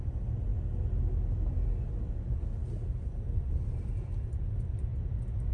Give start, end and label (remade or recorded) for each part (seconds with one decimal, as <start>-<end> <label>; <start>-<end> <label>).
0.0-5.5 recorded